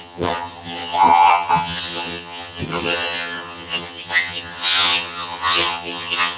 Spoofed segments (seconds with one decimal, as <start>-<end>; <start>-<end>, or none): 0.0-6.4